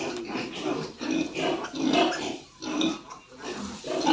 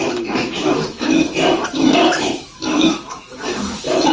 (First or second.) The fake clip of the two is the second